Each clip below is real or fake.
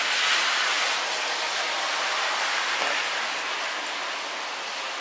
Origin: real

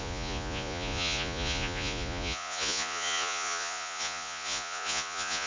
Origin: fake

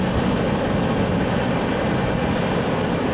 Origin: real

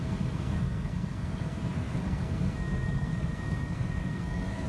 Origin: fake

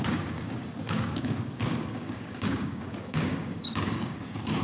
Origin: fake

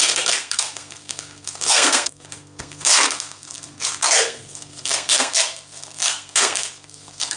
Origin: fake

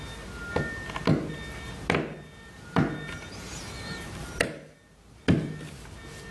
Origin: real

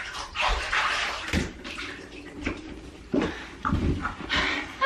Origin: fake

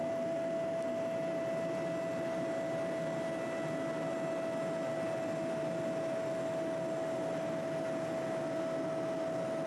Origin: real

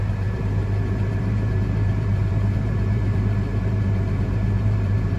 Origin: fake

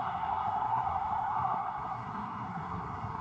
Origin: fake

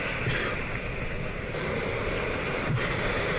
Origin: real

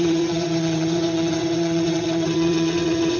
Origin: fake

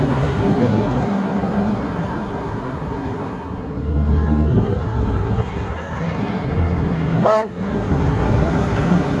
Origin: fake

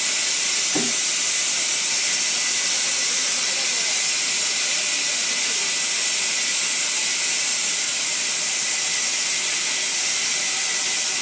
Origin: real